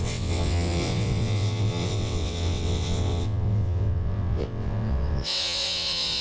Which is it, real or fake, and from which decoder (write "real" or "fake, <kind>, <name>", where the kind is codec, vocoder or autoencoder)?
fake, vocoder, WaveNeXt